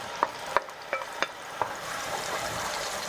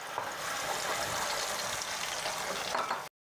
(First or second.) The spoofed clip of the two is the first